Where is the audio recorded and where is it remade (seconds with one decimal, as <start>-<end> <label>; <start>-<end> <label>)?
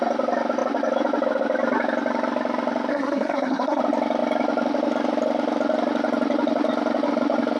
0.0-2.9 recorded; 2.9-3.8 remade; 3.8-7.6 recorded